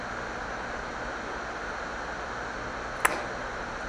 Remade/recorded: recorded